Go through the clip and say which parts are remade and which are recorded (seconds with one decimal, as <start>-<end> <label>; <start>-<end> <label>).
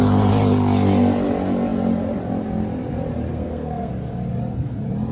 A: 0.0-3.3 recorded; 3.3-3.9 remade; 3.9-5.1 recorded